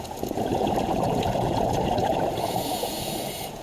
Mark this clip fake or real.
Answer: fake